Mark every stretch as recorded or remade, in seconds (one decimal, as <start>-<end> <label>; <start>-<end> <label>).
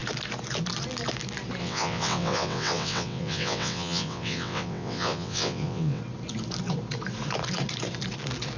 0.0-1.6 recorded; 1.6-6.0 remade; 6.0-8.6 recorded